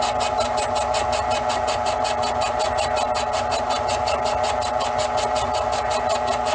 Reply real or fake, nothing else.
real